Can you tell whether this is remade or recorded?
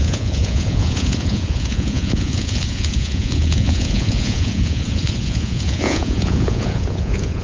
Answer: remade